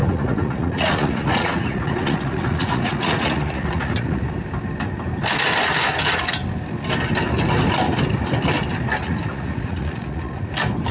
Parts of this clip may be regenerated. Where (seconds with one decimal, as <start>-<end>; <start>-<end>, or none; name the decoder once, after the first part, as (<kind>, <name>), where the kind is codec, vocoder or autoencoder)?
0.0-4.3 (vocoder, Vocos); 9.0-10.5